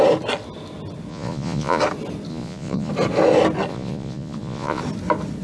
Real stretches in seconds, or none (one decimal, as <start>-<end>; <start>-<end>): 0.0-1.1; 1.8-2.3; 2.9-3.7; 4.8-5.4